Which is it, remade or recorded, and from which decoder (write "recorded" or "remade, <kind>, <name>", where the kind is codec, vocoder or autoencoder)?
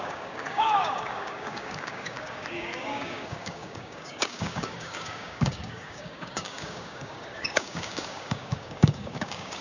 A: remade, codec, DAC